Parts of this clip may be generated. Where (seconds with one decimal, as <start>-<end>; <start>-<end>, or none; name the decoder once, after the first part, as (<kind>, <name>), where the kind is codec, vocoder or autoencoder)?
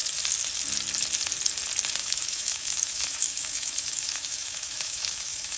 2.0-5.6 (autoencoder, DAC-VAE)